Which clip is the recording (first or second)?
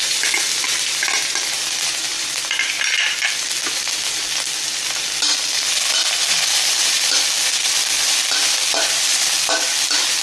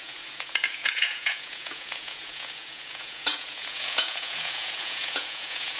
first